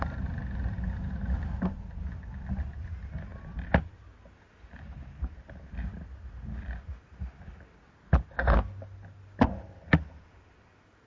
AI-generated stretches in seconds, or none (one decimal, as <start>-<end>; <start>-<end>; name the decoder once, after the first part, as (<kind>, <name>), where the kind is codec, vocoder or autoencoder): none